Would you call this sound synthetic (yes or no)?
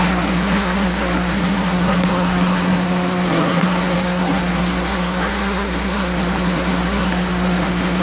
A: yes